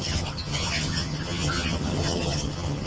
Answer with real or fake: fake